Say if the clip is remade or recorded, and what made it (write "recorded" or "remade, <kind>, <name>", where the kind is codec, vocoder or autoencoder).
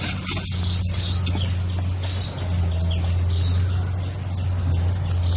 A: recorded